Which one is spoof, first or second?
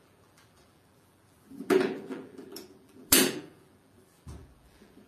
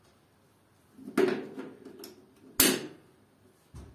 first